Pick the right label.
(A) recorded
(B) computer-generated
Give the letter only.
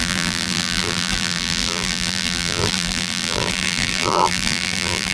B